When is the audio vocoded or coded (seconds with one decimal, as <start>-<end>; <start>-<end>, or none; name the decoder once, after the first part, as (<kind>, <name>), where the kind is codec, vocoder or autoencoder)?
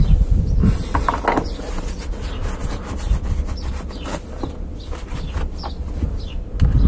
none